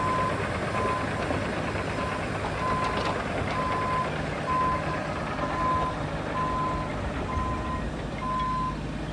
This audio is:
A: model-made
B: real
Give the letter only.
B